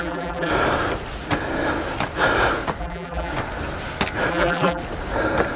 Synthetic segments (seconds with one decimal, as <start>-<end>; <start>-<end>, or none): 0.0-0.5; 2.8-3.3; 4.3-4.8